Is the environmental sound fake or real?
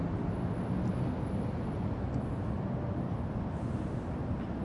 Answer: real